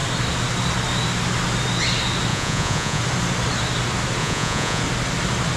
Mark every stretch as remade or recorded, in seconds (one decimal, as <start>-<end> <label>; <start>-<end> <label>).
0.0-2.3 recorded; 2.3-3.0 remade; 3.0-4.2 recorded; 4.2-4.8 remade; 4.8-5.6 recorded